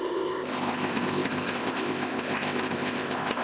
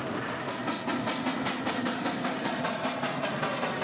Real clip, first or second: second